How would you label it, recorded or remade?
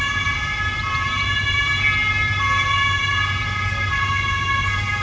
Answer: recorded